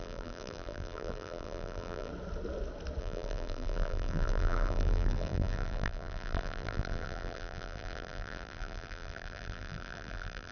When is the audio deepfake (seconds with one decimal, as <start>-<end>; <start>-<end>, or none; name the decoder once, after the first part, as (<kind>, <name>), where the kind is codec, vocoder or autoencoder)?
0.0-2.1 (vocoder, BigVGAN v2); 3.0-10.5